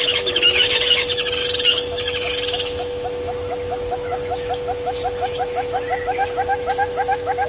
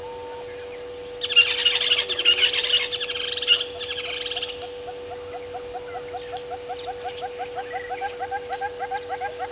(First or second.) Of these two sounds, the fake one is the first